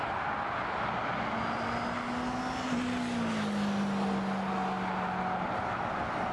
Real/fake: real